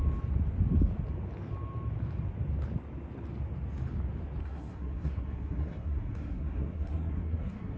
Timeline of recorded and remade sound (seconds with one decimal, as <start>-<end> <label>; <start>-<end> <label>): 0.0-4.4 recorded; 4.4-7.8 remade